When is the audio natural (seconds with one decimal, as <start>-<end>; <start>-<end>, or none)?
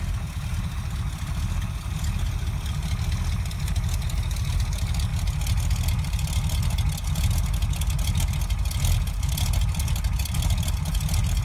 0.0-11.4